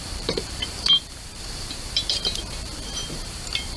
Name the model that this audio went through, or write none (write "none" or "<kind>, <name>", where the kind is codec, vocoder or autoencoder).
vocoder, BigVGAN v2